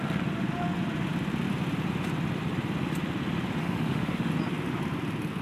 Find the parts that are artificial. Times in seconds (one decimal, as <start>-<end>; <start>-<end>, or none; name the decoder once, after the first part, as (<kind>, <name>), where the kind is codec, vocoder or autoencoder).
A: 3.6-4.3 (autoencoder, DAC-VAE)